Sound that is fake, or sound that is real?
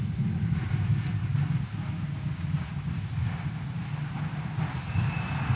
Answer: real